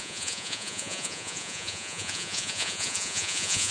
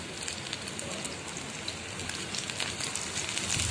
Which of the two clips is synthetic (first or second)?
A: first